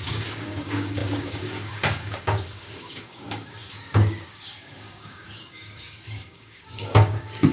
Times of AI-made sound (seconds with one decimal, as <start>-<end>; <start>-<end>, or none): 0.0-7.5